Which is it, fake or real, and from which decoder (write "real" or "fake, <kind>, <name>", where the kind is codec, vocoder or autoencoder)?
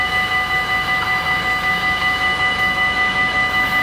fake, autoencoder, DAC-VAE